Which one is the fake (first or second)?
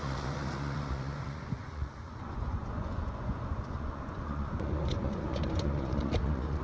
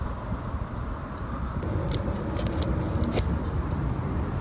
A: first